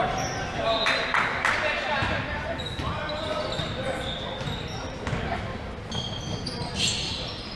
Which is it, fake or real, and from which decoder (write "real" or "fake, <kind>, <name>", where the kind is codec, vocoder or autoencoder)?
real